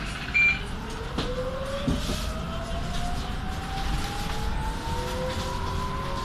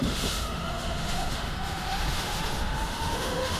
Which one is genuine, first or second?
first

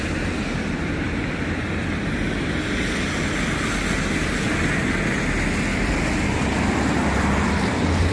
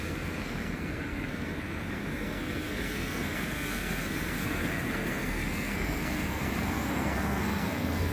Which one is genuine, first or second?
first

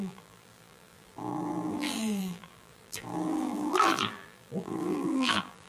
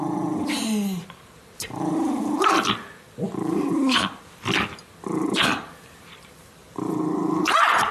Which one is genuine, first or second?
second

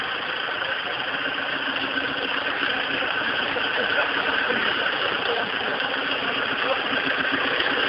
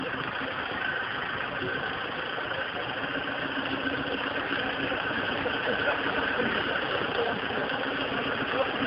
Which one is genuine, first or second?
second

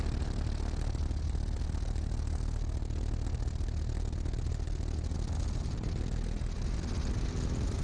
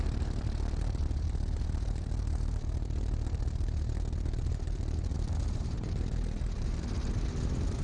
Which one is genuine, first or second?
first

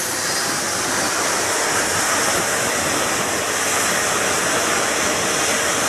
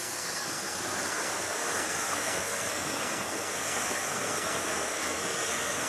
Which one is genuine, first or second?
first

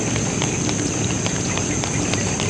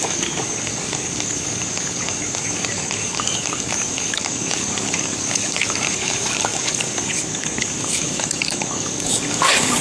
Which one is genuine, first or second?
first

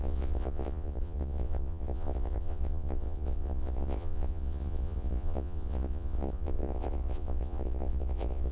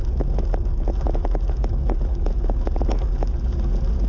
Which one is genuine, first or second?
second